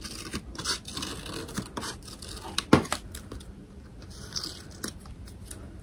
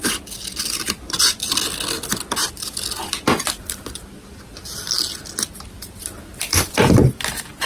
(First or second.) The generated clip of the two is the first